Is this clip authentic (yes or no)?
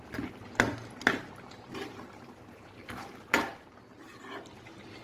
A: yes